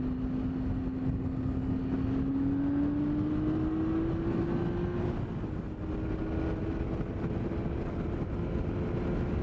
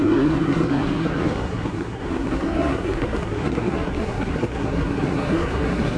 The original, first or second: first